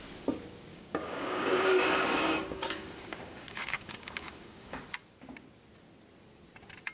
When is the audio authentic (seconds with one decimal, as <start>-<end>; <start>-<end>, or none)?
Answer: 0.0-0.7; 4.8-6.9